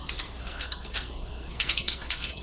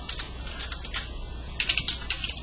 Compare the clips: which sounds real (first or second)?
second